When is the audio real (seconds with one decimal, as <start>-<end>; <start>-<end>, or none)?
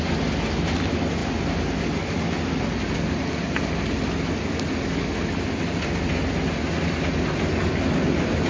0.0-8.5